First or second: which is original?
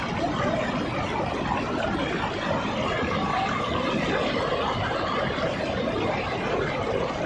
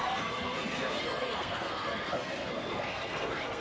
first